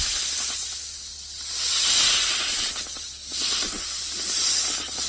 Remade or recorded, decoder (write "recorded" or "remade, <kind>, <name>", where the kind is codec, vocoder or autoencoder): recorded